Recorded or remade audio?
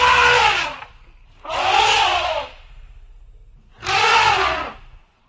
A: recorded